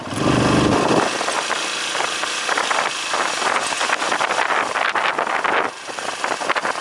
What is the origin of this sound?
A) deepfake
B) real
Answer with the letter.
B